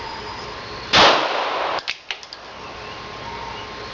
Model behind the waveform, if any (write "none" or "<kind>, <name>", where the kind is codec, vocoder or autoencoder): none